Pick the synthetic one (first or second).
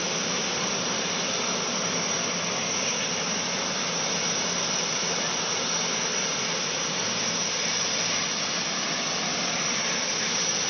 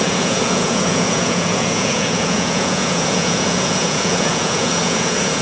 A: second